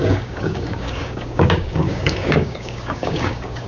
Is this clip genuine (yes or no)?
no